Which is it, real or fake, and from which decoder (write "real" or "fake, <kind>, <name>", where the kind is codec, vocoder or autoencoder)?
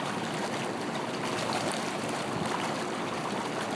real